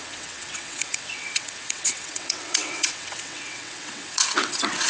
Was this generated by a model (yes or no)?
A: yes